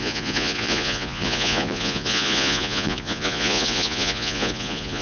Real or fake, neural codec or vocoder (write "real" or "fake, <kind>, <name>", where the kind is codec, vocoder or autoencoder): fake, vocoder, Vocos